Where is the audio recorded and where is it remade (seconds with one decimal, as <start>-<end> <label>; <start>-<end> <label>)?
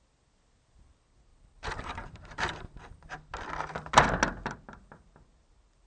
0.0-1.3 recorded; 1.3-3.1 remade; 3.1-5.9 recorded